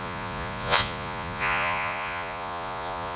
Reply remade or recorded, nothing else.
remade